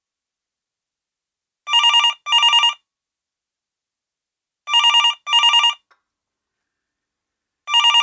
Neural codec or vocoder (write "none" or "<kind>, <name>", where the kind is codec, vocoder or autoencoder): none